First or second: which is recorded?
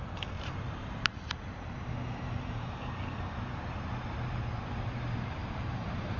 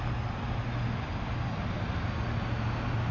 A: second